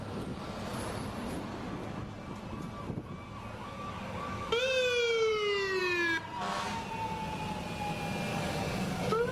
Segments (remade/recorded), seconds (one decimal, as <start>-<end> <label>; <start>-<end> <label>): 0.0-3.6 recorded; 3.6-4.6 remade; 4.6-8.3 recorded; 8.3-9.3 remade